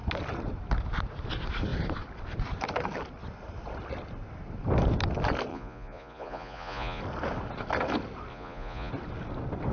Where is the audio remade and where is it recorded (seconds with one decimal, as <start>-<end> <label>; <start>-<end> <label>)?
0.0-5.5 recorded; 5.5-7.0 remade; 7.0-8.3 recorded; 8.3-8.9 remade; 8.9-9.7 recorded